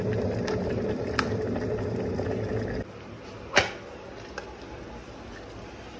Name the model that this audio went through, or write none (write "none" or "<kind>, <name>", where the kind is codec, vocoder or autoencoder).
none